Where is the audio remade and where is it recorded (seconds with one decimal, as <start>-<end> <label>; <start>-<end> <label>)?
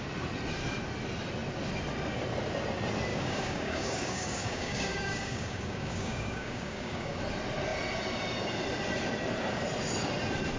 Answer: 0.0-3.1 recorded; 3.1-7.2 remade; 7.2-10.6 recorded